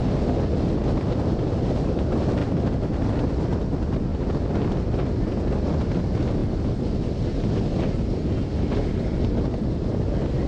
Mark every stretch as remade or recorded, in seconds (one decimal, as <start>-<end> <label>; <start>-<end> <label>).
0.0-4.1 recorded; 4.1-5.9 remade; 5.9-6.4 recorded; 6.4-9.4 remade; 9.4-10.5 recorded